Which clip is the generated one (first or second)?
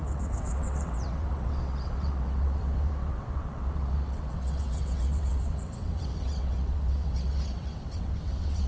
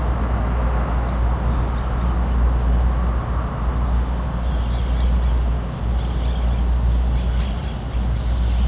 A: first